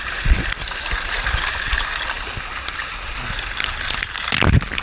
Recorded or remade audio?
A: recorded